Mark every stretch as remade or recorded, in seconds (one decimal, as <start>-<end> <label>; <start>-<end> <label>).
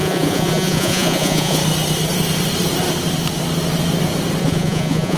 0.0-1.6 remade; 1.6-4.4 recorded; 4.4-5.2 remade